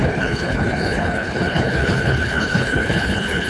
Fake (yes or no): yes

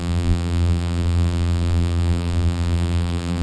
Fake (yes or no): yes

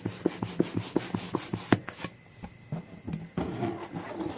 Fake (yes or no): no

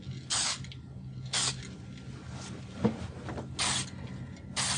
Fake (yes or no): no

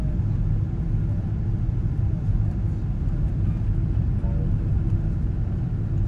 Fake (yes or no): no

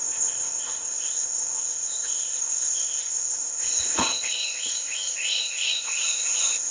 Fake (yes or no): yes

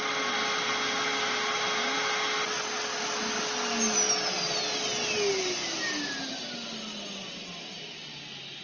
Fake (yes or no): no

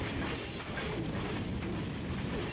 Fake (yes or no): no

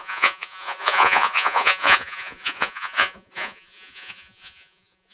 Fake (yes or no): yes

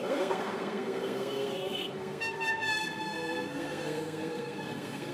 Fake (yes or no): yes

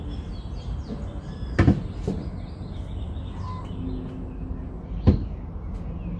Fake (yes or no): no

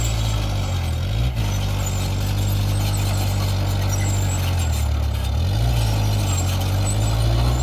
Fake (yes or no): no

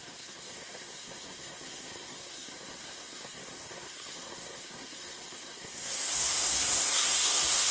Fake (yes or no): yes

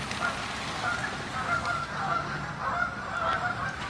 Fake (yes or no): no